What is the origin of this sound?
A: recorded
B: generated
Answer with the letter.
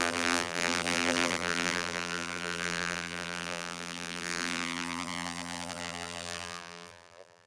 B